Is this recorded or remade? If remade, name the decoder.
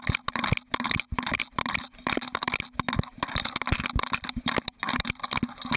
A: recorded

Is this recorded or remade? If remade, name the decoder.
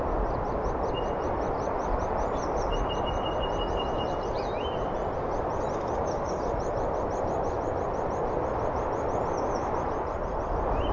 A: recorded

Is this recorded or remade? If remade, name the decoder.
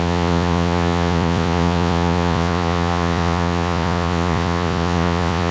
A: remade, vocoder, Vocos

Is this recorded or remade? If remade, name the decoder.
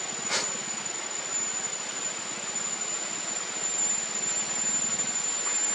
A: recorded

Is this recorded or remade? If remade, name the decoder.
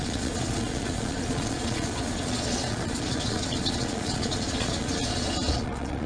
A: remade, vocoder, Vocos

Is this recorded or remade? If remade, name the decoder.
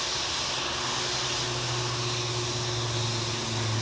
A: recorded